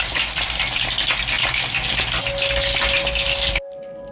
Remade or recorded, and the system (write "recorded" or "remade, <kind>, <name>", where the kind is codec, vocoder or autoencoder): recorded